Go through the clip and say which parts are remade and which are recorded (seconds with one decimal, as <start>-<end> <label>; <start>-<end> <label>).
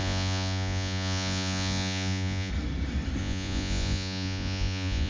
0.0-2.5 remade; 2.5-3.2 recorded; 3.2-5.1 remade